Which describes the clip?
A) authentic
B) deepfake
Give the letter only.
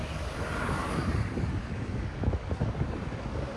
B